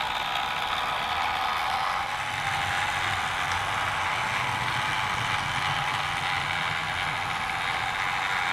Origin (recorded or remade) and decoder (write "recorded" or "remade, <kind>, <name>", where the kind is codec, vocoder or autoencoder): recorded